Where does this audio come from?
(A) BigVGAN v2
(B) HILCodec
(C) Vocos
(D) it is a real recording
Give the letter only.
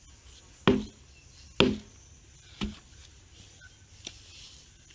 D